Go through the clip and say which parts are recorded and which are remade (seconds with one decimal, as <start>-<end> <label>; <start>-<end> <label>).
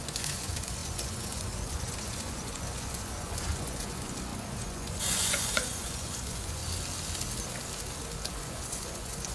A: 0.0-6.6 remade; 6.6-8.3 recorded; 8.3-9.3 remade